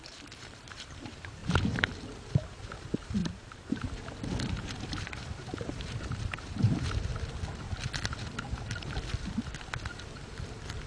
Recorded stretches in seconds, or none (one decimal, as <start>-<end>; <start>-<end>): 7.1-10.4